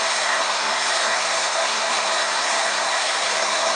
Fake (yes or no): yes